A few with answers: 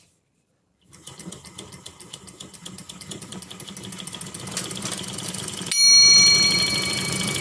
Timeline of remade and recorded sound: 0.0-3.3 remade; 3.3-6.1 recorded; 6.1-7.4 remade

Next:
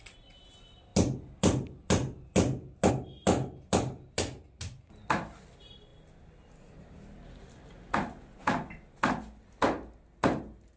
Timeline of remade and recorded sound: 0.0-10.8 recorded

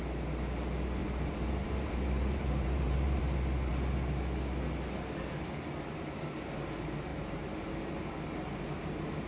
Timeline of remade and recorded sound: 0.0-1.0 recorded; 1.0-3.2 remade; 3.2-7.1 recorded; 7.1-7.8 remade; 7.8-9.3 recorded

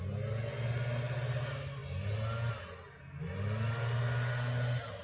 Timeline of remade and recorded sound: 0.0-5.0 recorded